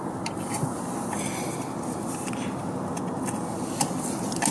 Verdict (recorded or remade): recorded